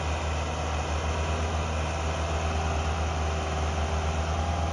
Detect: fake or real real